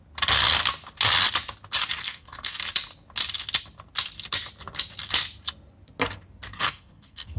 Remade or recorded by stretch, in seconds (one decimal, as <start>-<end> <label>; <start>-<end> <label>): 0.0-2.0 recorded; 2.0-2.6 remade; 2.6-6.5 recorded; 6.5-7.4 remade